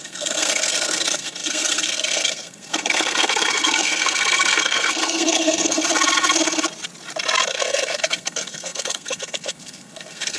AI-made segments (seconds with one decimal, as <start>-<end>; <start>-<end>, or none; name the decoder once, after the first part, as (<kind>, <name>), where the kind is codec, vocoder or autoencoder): 0.0-5.8 (codec, SNAC); 7.5-10.4